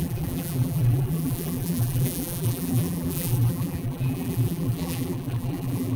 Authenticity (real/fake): fake